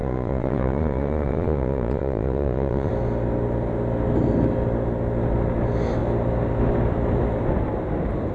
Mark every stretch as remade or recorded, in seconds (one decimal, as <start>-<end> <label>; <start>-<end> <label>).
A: 0.0-2.9 remade; 2.9-8.3 recorded